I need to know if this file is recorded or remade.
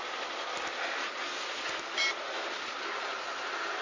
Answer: recorded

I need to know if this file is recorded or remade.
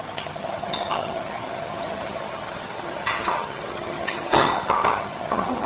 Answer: remade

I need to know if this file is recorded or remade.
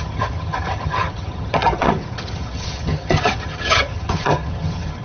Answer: remade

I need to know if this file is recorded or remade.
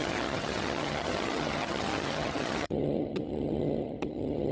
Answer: remade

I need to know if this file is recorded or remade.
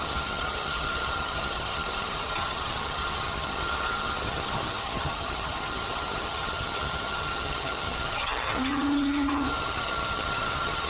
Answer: remade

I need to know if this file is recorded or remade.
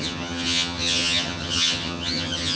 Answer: remade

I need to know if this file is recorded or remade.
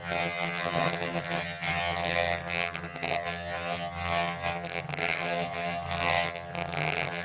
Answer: remade